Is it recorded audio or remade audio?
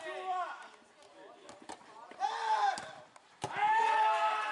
recorded